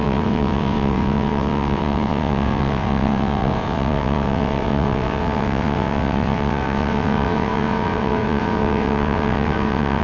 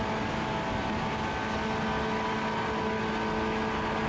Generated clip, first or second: first